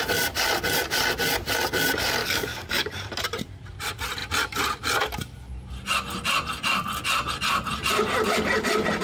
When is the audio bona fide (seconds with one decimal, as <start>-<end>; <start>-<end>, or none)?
0.0-2.2; 3.1-9.0